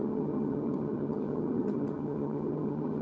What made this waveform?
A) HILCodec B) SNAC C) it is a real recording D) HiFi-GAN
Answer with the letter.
D